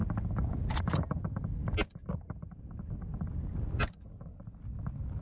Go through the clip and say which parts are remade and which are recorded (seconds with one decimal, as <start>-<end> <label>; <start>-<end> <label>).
0.0-5.2 recorded

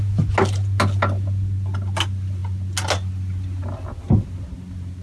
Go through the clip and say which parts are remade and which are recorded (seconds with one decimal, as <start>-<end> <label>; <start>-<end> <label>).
0.0-5.0 recorded

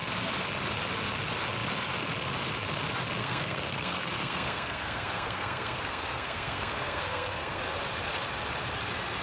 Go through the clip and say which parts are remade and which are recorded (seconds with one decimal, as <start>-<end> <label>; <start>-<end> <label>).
0.0-3.2 recorded; 3.2-7.6 remade; 7.6-9.2 recorded

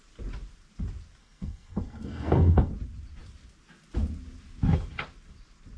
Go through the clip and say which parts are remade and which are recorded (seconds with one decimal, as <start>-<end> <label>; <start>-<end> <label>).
0.0-1.2 recorded; 1.2-2.7 remade; 2.7-5.8 recorded

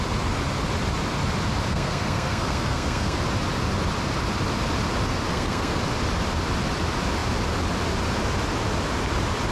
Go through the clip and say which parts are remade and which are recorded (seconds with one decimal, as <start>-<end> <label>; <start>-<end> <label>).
0.0-1.7 recorded; 1.7-3.2 remade; 3.2-5.3 recorded; 5.3-5.8 remade; 5.8-9.5 recorded

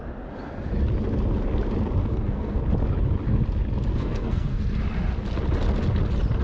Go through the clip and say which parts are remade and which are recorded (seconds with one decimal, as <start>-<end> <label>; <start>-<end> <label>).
0.0-2.0 recorded; 2.0-2.6 remade; 2.6-3.9 recorded; 3.9-4.6 remade; 4.6-6.4 recorded

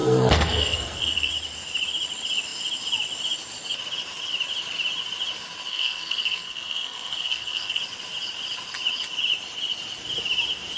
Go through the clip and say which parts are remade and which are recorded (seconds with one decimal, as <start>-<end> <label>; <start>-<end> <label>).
0.0-1.3 remade; 1.3-5.7 recorded; 5.7-7.8 remade; 7.8-10.8 recorded